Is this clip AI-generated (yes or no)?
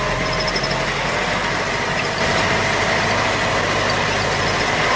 no